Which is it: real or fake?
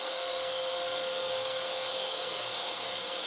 fake